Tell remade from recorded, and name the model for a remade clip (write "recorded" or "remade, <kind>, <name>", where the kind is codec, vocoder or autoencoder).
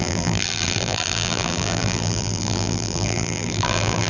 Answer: remade, vocoder, BigVGAN v2